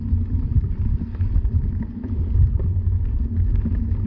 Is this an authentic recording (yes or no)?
yes